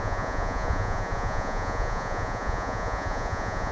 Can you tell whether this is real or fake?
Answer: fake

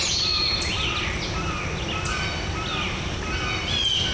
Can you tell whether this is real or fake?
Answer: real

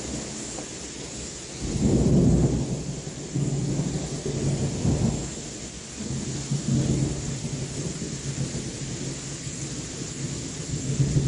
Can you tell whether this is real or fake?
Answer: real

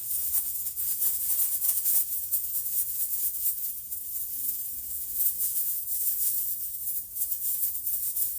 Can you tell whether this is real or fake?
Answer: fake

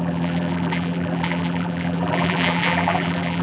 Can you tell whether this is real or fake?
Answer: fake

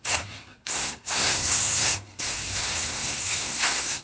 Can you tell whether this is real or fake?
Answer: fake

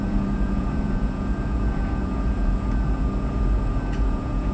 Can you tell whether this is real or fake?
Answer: fake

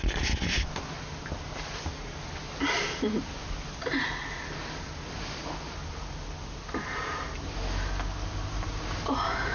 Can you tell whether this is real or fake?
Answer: real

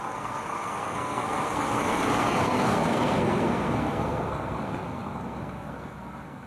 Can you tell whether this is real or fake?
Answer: fake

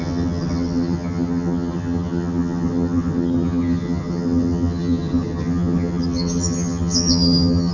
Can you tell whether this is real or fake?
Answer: fake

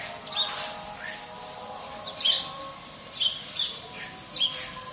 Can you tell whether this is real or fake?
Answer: real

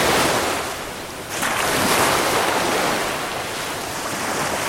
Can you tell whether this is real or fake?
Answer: real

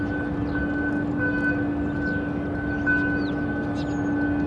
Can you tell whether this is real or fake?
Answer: real